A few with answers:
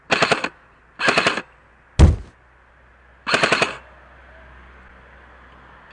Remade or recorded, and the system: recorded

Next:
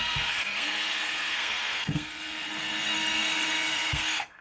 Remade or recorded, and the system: remade, codec, SNAC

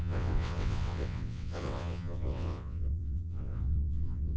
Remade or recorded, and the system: remade, vocoder, WaveNeXt